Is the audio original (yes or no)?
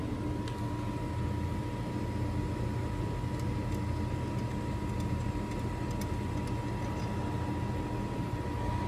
yes